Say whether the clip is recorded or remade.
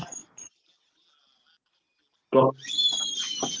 recorded